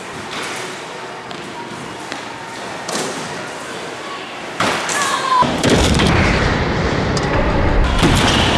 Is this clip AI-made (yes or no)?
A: yes